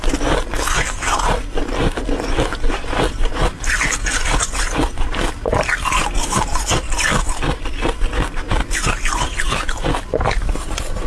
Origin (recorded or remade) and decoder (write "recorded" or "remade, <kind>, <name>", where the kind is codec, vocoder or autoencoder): recorded